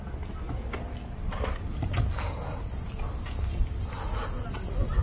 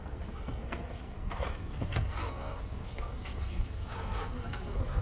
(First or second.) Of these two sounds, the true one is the first